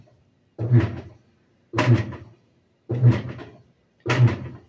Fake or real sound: real